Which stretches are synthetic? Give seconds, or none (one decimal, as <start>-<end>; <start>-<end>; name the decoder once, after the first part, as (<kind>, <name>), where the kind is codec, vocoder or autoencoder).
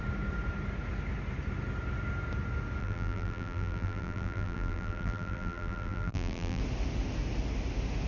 2.8-6.6 (vocoder, BigVGAN v2)